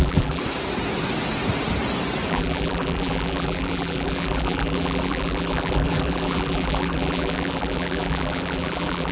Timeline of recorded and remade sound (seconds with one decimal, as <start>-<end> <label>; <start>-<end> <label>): 0.0-0.4 remade; 0.4-2.3 recorded; 2.3-9.1 remade